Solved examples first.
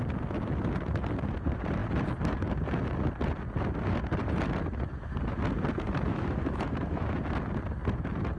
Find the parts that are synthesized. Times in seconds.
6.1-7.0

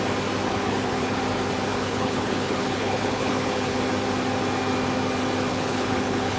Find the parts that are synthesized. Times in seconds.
0.5-1.2; 1.7-3.8; 5.5-6.4

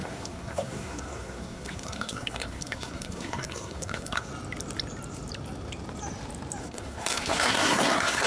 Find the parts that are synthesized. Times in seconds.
0.0-4.3; 6.6-8.3

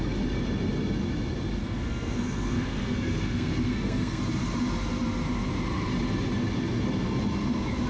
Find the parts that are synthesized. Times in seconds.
1.6-4.2

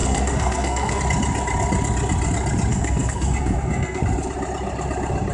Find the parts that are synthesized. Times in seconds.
0.0-1.0; 2.7-4.0

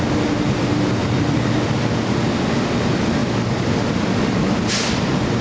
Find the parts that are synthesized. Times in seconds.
1.0-1.6; 3.2-3.9